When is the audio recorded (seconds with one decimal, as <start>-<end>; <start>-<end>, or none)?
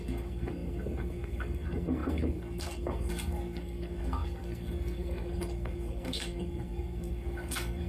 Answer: none